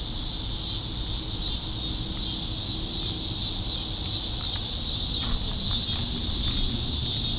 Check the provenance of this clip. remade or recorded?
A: recorded